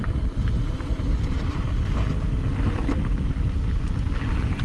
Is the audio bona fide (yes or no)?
yes